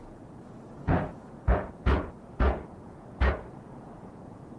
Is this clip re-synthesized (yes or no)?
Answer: yes